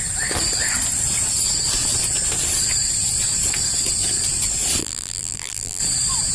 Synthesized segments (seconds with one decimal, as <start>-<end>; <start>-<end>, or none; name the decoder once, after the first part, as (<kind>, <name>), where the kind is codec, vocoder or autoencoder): 4.8-5.8 (vocoder, BigVGAN v2)